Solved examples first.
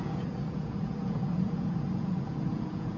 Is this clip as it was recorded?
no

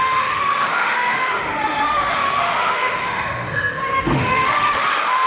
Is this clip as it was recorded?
no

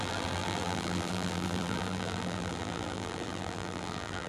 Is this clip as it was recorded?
no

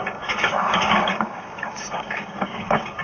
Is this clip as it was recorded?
no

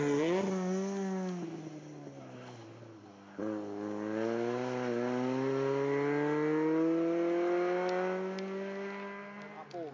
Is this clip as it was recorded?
yes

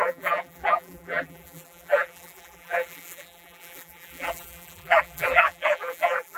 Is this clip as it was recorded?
no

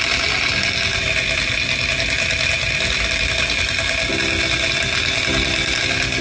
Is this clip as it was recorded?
yes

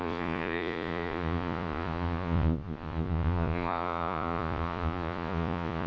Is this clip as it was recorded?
no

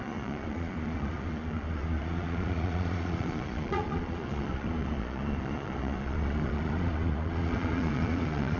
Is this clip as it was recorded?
no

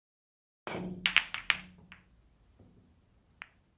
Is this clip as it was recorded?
yes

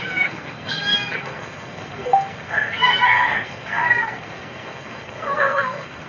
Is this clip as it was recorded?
no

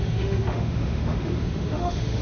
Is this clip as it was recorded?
no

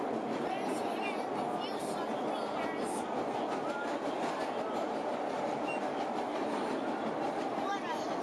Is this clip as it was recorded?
yes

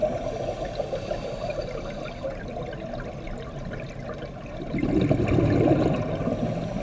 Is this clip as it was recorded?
yes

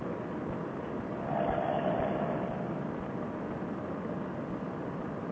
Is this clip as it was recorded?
yes